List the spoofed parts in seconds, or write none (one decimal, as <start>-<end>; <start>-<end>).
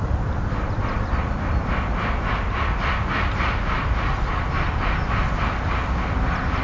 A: none